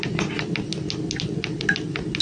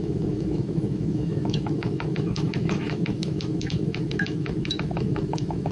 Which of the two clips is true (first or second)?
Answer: first